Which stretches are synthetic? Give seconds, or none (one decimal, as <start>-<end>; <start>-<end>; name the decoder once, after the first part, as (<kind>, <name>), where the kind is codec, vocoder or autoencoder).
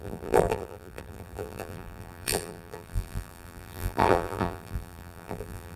0.0-5.8 (vocoder, BigVGAN v2)